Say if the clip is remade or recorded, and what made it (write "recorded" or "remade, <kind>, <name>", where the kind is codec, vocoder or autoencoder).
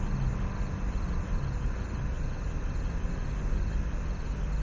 recorded